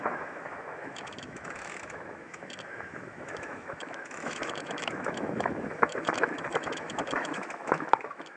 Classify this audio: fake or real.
fake